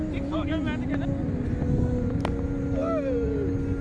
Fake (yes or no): no